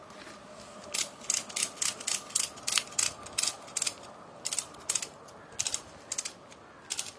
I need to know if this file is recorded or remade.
recorded